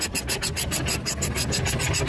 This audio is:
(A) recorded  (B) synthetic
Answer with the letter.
A